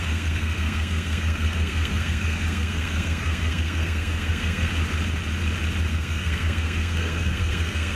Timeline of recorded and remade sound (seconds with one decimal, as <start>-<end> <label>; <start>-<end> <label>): 0.0-4.7 remade; 4.7-5.9 recorded; 5.9-8.0 remade